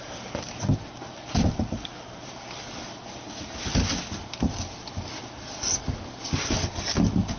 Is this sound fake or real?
real